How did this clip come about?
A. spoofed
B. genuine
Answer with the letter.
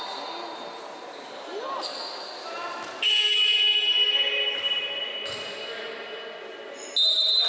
B